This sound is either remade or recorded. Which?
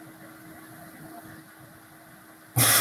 recorded